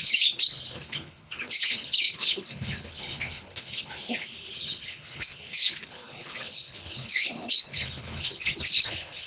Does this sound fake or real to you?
fake